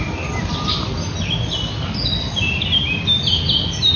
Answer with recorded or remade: recorded